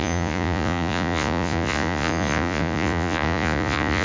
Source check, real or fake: fake